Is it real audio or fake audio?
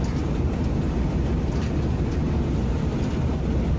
real